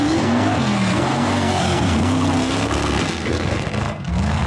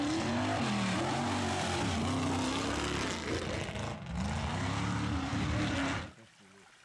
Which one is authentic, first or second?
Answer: second